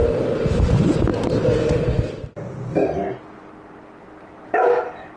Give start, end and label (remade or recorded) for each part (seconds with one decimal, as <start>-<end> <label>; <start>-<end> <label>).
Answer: 0.0-5.2 recorded

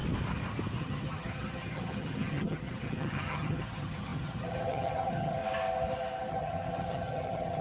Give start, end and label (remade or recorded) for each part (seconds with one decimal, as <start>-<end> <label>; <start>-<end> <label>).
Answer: 0.0-0.8 recorded; 0.8-5.4 remade; 5.4-6.3 recorded; 6.3-7.6 remade

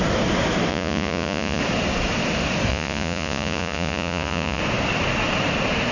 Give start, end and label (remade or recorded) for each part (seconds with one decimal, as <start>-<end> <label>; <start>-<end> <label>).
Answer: 0.0-0.7 recorded; 0.7-1.6 remade; 1.6-2.7 recorded; 2.7-4.6 remade; 4.6-5.9 recorded